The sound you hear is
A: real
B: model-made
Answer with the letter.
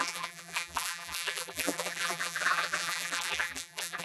B